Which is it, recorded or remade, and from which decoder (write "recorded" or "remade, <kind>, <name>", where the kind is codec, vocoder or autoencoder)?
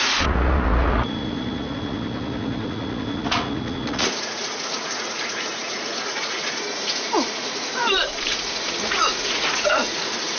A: remade, vocoder, Vocos